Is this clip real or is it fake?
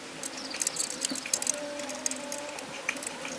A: real